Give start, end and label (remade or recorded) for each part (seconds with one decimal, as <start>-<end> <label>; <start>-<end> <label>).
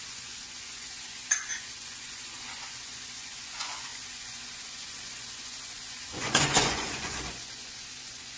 0.0-8.4 remade